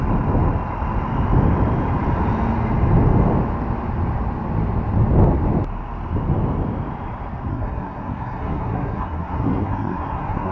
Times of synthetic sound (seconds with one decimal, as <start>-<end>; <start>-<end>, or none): 7.5-10.5